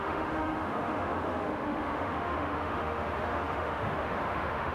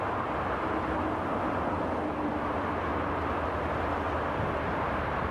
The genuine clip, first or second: second